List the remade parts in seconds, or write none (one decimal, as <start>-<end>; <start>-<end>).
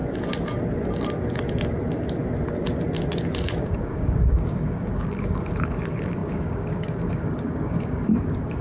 3.6-8.6